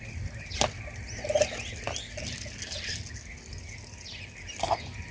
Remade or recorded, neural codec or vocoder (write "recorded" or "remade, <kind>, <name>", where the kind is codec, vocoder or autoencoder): recorded